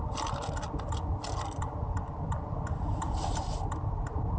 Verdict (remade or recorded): recorded